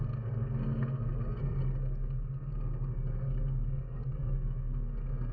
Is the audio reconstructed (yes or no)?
yes